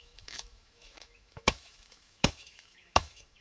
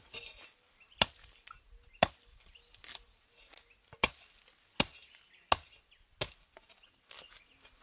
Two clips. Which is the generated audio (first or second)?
first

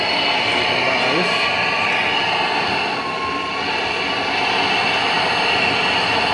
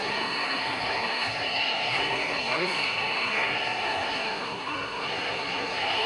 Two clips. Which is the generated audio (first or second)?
second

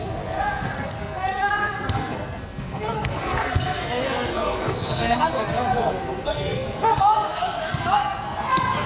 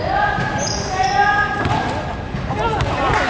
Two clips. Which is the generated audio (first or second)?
first